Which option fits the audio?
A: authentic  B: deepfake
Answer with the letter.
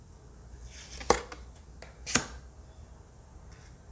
A